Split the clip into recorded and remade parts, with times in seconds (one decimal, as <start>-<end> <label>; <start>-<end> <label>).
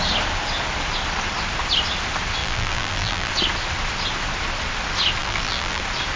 0.0-2.4 recorded; 2.4-3.3 remade; 3.3-5.2 recorded; 5.2-5.8 remade; 5.8-6.2 recorded